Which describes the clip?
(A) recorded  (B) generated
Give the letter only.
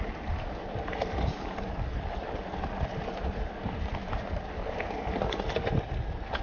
A